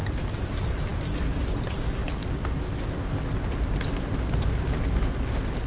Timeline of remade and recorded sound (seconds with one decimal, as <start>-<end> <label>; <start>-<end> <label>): 0.0-5.7 recorded